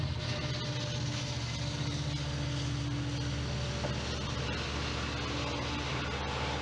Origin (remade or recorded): recorded